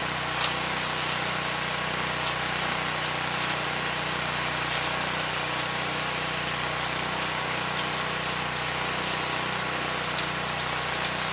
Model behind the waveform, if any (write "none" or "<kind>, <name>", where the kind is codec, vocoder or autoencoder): none